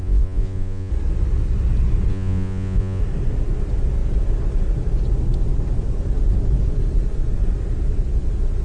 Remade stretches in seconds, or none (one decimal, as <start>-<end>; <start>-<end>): 0.0-0.9; 2.1-3.0